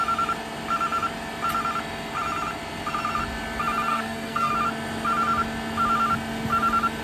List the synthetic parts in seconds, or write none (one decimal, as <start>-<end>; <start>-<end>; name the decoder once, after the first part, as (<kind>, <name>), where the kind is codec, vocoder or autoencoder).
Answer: 3.9-4.5 (codec, SNAC)

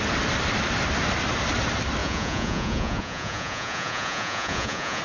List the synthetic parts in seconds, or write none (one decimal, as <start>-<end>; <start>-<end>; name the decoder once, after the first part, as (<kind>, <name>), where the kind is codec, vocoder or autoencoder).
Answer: 2.0-5.0 (vocoder, Vocos)

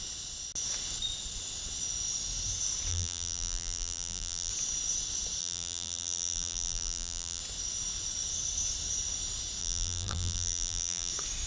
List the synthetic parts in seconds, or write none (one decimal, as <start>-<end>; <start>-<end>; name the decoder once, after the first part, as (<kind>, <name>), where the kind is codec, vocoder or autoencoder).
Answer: 2.9-4.5 (vocoder, BigVGAN v2); 5.4-7.4; 9.6-11.1